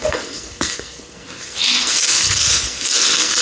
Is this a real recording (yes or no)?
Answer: no